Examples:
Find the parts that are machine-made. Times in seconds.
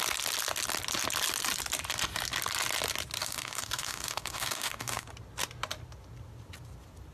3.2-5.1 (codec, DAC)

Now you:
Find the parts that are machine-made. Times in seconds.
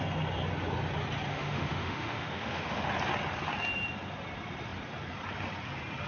1.3-2.9 (autoencoder, DAC-VAE)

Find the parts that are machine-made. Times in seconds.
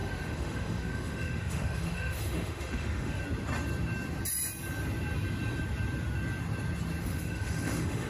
0.0-3.2 (autoencoder, DAC-VAE); 7.0-8.1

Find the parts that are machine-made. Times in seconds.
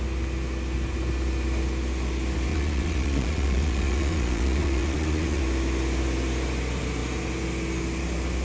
2.5-5.4 (vocoder, Vocos)